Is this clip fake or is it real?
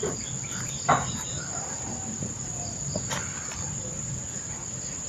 real